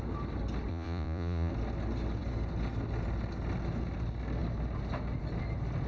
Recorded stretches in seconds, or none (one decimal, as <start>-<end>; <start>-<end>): 0.0-0.7; 1.5-5.9